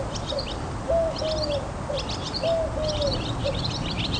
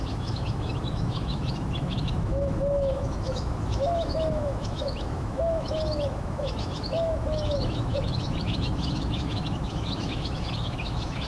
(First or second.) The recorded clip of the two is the first